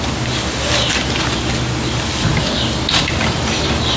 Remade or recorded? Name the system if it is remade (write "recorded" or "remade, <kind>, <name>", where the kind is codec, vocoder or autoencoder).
recorded